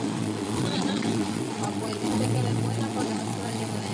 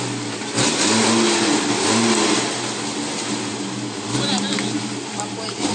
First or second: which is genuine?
second